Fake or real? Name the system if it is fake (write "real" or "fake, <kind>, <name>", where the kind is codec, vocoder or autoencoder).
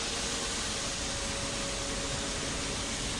real